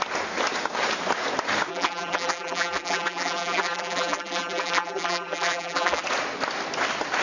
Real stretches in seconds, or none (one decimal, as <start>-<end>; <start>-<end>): 0.0-1.7; 6.0-7.2